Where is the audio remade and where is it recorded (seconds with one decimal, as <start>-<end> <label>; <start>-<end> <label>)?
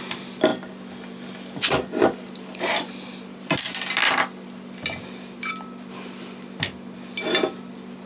0.0-8.1 recorded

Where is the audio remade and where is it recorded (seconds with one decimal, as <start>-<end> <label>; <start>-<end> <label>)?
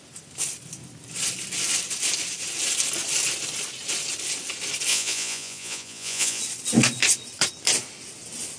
0.0-4.9 recorded; 4.9-6.4 remade; 6.4-8.6 recorded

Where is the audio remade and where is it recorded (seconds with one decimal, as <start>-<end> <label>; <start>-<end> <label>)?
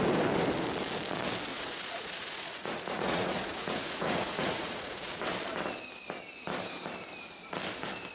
0.0-1.5 recorded; 1.5-5.2 remade; 5.2-8.1 recorded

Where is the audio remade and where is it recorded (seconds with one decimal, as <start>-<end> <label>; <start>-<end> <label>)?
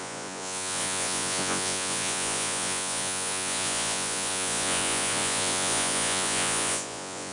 0.0-7.3 remade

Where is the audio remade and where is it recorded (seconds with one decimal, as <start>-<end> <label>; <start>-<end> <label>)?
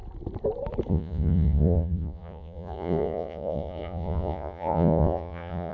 0.0-0.9 recorded; 0.9-5.7 remade